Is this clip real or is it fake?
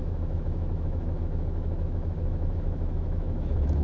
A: fake